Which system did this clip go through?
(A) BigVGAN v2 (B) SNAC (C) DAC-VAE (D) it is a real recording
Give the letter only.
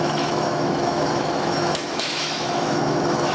C